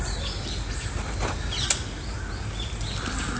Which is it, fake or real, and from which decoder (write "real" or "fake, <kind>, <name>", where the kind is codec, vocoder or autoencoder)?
real